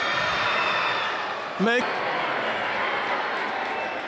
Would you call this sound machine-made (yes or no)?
no